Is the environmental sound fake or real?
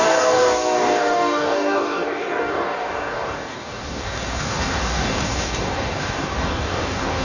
fake